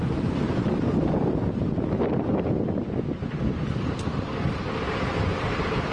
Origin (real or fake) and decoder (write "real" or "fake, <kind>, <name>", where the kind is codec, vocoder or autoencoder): real